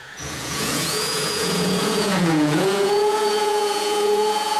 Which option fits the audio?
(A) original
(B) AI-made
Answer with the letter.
B